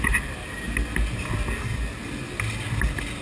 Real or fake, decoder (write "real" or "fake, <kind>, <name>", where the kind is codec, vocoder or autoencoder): real